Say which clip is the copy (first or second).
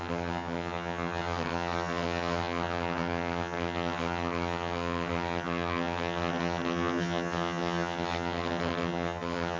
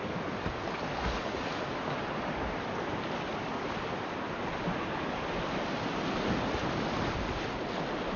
first